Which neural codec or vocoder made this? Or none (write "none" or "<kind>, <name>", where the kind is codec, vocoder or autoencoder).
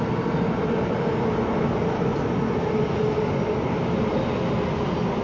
none